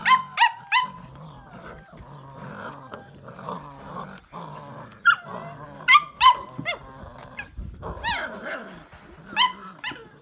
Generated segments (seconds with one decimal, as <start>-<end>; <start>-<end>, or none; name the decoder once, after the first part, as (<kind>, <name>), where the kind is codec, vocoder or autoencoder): none